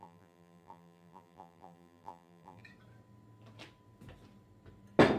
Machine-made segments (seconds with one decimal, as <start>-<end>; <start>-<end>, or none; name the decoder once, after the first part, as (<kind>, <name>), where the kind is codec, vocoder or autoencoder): 0.0-2.6 (vocoder, BigVGAN v2)